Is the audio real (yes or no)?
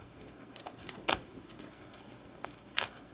no